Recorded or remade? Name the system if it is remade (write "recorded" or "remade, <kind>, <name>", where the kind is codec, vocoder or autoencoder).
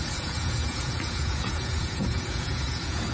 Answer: remade, vocoder, Vocos